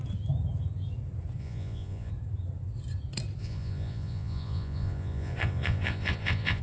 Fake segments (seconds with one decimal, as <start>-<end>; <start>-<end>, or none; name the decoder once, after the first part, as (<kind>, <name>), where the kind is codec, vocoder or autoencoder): 1.4-2.1 (vocoder, Vocos); 3.4-6.6